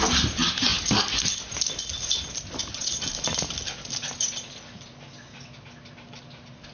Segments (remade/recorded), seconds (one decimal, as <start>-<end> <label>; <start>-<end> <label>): 0.0-6.7 recorded

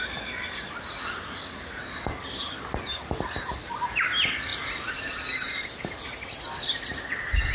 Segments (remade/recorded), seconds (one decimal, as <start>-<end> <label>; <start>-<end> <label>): 0.0-7.5 recorded

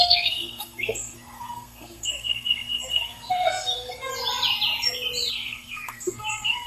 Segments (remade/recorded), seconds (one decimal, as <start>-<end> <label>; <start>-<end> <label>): 0.0-4.1 remade; 4.1-5.3 recorded; 5.3-6.7 remade

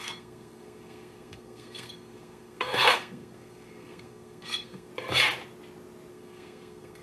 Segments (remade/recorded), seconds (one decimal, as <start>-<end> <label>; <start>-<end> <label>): 0.0-4.9 remade; 4.9-6.1 recorded; 6.1-7.0 remade